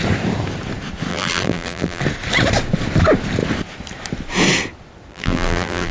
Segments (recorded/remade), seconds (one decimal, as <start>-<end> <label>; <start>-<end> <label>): 0.0-1.1 recorded; 1.1-2.0 remade; 2.0-5.1 recorded; 5.1-5.9 remade

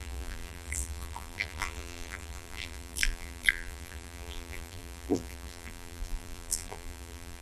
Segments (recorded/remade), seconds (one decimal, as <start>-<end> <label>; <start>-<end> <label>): 0.0-7.4 remade

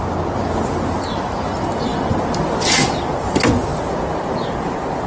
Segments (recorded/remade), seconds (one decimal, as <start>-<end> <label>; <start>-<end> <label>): 0.0-1.9 recorded; 1.9-2.6 remade; 2.6-3.7 recorded; 3.7-4.2 remade; 4.2-5.1 recorded

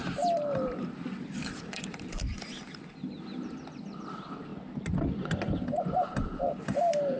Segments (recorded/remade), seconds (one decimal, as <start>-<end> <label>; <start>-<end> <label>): 0.0-4.5 remade; 4.5-5.5 recorded; 5.5-7.2 remade

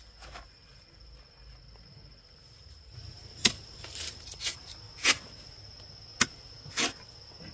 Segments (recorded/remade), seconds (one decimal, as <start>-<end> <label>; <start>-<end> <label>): 0.0-2.4 recorded; 2.4-4.7 remade; 4.7-7.5 recorded